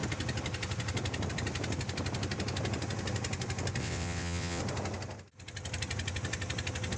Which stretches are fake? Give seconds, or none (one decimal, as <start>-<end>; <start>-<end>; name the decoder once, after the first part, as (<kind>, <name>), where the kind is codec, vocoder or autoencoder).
3.8-4.6 (vocoder, WaveNeXt)